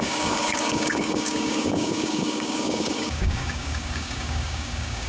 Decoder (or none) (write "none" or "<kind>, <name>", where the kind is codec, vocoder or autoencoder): codec, DAC